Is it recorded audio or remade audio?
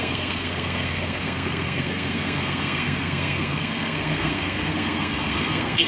remade